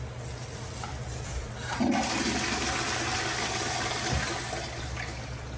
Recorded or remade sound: recorded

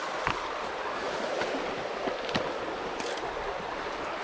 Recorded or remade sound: recorded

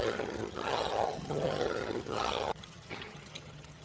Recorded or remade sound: remade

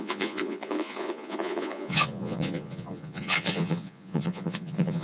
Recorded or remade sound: remade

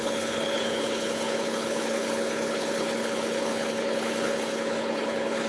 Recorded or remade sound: remade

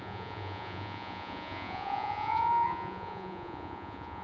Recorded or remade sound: remade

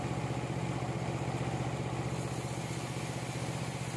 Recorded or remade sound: recorded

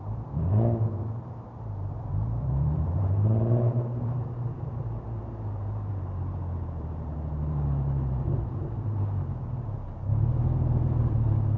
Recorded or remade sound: remade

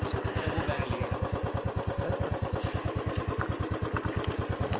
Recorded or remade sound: recorded